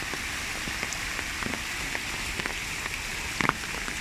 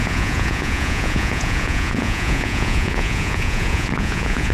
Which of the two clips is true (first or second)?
first